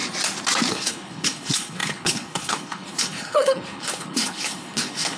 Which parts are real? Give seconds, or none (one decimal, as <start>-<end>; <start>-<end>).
0.0-0.7